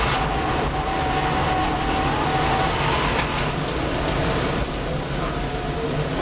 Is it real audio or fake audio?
real